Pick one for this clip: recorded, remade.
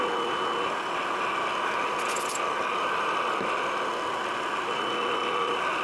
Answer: recorded